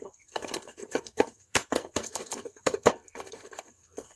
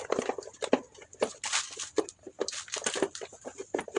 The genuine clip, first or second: second